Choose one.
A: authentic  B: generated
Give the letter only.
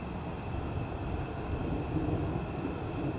A